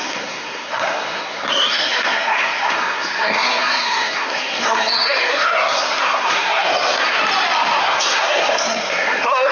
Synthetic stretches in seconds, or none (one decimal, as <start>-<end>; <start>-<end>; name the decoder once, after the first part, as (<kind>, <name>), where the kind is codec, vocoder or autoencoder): 0.0-7.2 (codec, SNAC); 7.8-9.5